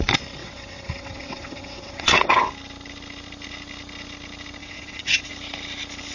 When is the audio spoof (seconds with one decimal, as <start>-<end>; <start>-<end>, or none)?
0.4-2.5; 4.6-5.3